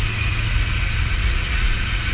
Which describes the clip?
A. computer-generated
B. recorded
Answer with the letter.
A